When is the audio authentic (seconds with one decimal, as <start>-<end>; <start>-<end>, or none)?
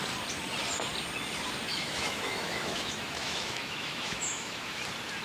0.0-1.7; 4.8-5.2